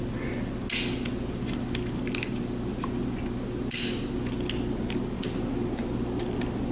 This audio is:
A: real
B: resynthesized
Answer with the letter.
A